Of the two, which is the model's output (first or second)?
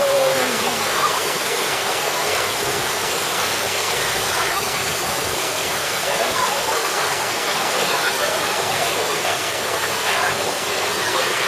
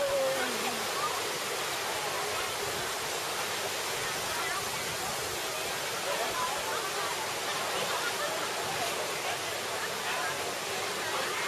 first